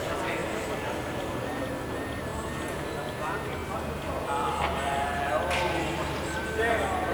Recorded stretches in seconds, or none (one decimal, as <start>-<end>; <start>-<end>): 2.3-3.2; 3.6-7.1